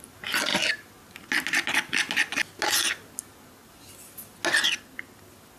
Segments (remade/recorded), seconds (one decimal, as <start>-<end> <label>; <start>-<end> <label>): 0.0-5.6 recorded